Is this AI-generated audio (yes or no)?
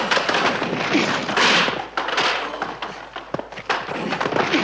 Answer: no